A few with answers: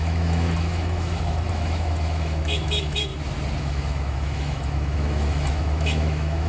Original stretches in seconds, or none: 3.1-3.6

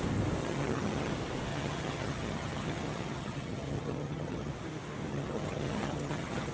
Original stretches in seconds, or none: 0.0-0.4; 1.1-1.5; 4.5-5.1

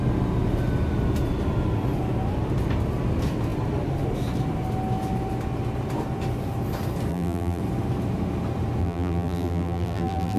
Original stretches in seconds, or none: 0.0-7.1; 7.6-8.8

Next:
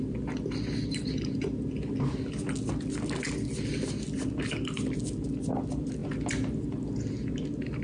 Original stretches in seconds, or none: 0.0-7.8

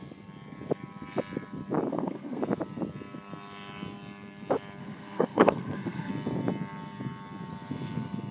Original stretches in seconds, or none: 0.0-1.9; 2.4-4.8; 6.1-8.3